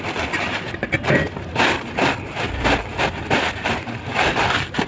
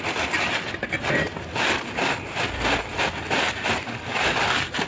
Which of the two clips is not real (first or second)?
first